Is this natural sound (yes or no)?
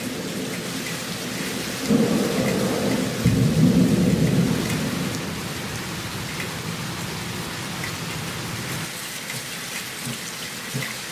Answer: yes